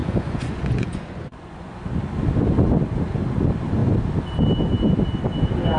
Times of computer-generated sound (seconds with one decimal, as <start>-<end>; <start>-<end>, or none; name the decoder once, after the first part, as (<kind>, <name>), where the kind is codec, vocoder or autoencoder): 0.0-1.8 (vocoder, Vocos)